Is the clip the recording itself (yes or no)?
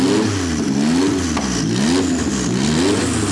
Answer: yes